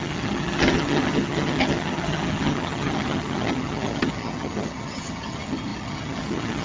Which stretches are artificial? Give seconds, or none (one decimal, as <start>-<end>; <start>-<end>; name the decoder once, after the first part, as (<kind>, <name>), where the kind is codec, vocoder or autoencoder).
0.0-6.6 (vocoder, HiFi-GAN)